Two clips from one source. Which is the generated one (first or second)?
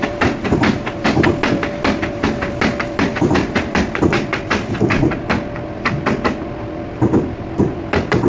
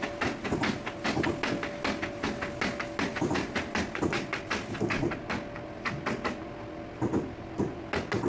first